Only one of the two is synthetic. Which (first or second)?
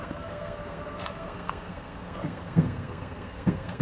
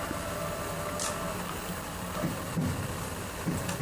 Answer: first